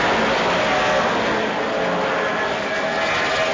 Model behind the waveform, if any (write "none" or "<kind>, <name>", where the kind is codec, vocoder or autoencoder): none